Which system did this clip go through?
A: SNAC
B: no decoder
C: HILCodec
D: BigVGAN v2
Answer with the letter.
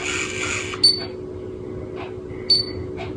B